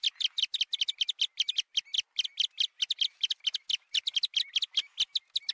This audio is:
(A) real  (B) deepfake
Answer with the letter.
A